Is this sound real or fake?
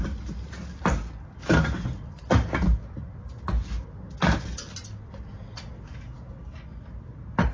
real